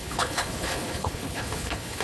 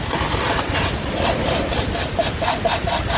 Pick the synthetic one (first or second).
first